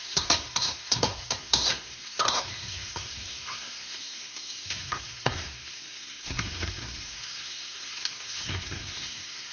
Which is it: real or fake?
fake